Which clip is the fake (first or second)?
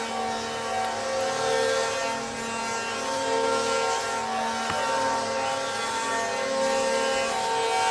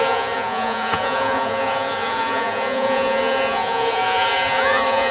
second